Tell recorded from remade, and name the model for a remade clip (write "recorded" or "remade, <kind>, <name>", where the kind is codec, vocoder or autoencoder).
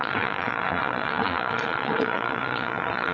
remade, vocoder, Vocos